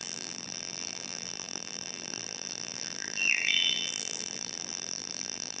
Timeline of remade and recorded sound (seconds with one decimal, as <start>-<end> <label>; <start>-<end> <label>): 0.0-5.6 remade